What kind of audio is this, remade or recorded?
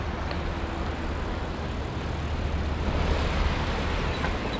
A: recorded